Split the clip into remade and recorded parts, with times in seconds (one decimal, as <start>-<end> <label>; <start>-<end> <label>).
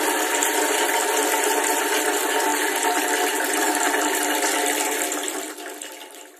0.0-6.4 recorded